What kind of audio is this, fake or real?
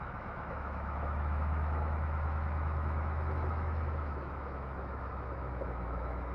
fake